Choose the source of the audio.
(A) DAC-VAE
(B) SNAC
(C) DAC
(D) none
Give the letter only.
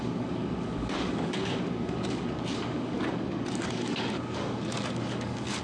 C